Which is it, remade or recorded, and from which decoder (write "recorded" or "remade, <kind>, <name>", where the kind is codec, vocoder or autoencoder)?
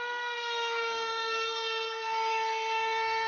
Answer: remade, codec, SNAC